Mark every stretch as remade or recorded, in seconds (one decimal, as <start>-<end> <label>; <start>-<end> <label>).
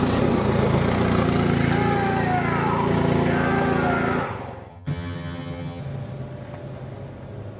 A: 0.0-4.7 recorded; 4.7-5.8 remade; 5.8-7.6 recorded